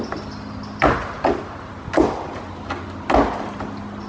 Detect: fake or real real